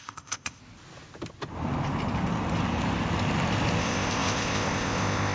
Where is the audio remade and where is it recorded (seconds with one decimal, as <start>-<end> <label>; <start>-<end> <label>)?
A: 0.0-0.6 remade; 0.6-3.8 recorded; 3.8-5.3 remade